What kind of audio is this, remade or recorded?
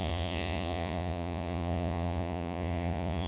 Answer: remade